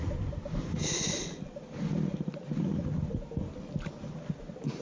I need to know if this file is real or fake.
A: real